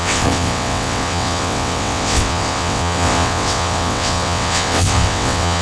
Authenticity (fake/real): fake